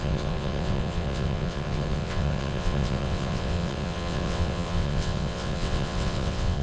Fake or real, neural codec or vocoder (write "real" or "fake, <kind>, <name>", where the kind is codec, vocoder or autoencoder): fake, vocoder, WaveNeXt